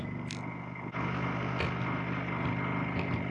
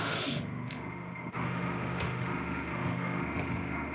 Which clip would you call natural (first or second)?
first